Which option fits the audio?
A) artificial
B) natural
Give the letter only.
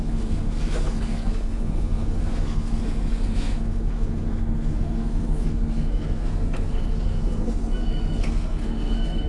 A